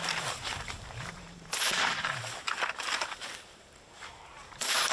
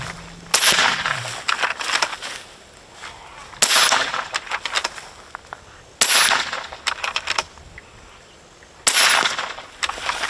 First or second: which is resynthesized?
first